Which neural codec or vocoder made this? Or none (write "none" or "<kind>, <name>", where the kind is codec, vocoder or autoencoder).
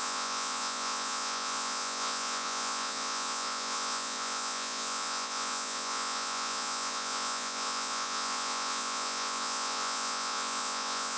vocoder, Vocos